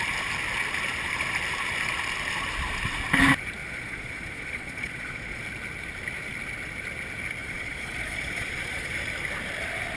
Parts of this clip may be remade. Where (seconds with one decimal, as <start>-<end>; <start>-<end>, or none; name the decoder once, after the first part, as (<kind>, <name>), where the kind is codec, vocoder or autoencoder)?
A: 3.6-5.4 (vocoder, Vocos); 7.4-8.9